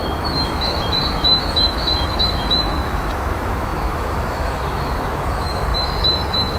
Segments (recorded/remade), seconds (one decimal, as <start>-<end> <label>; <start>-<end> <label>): 0.0-6.6 remade